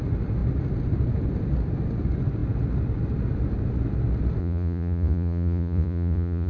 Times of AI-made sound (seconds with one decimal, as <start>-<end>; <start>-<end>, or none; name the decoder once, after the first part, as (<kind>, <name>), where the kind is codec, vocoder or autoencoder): 4.4-6.5 (vocoder, Vocos)